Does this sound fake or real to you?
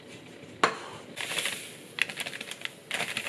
real